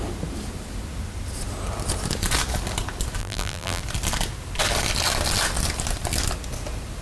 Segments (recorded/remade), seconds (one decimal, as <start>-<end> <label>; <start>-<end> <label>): 0.0-3.2 recorded; 3.2-3.8 remade; 3.8-7.0 recorded